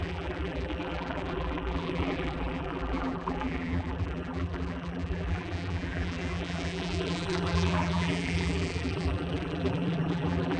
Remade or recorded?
remade